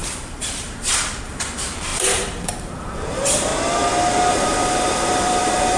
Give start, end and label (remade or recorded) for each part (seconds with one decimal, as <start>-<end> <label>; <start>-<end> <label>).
0.0-3.5 remade; 3.5-4.3 recorded; 4.3-5.8 remade